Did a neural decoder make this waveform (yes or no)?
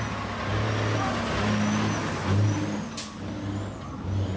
no